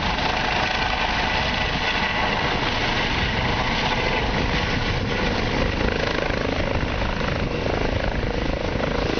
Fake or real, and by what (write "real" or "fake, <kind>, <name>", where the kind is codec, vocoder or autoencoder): real